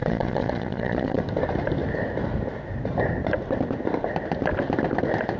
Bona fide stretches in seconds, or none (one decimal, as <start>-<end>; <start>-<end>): 1.2-5.4